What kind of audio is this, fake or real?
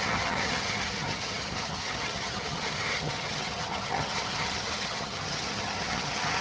fake